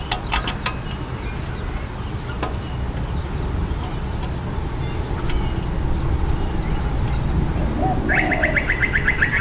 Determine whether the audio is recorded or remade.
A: recorded